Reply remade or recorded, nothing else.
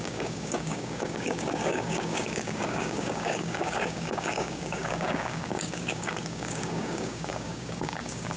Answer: remade